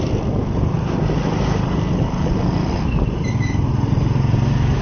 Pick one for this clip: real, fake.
real